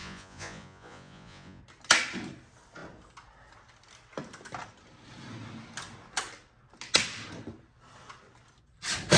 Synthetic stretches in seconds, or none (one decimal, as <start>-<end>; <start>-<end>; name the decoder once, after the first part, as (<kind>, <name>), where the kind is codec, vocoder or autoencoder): 0.0-1.6 (vocoder, Vocos)

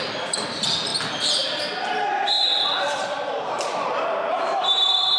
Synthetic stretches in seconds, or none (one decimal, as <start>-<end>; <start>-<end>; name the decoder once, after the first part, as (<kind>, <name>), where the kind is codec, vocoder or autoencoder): none

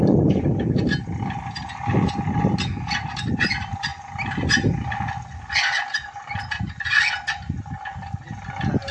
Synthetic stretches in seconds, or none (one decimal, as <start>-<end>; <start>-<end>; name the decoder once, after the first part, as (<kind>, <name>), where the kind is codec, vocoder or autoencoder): none

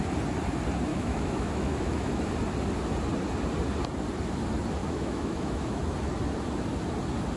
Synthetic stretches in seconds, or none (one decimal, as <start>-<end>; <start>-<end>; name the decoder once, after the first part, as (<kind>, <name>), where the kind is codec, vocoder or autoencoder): 0.9-2.3 (autoencoder, DAC-VAE); 4.8-5.8